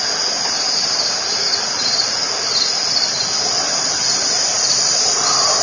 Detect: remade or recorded recorded